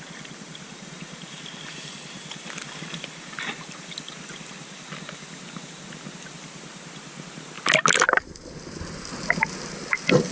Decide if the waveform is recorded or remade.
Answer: recorded